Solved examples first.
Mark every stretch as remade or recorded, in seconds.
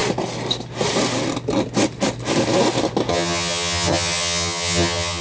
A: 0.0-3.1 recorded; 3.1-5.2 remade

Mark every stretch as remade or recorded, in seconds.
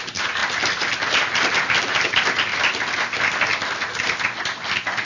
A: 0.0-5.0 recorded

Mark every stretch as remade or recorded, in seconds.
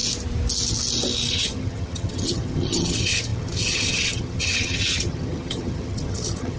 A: 0.0-1.3 recorded; 1.3-6.6 remade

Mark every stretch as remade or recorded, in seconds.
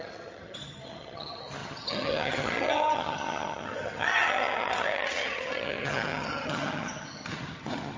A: 0.0-8.0 remade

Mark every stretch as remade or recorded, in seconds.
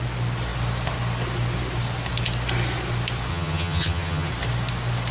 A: 0.0-3.3 recorded; 3.3-4.3 remade; 4.3-5.1 recorded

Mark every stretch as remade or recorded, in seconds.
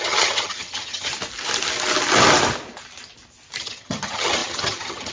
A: 0.0-1.1 remade; 1.1-3.6 recorded; 3.6-5.1 remade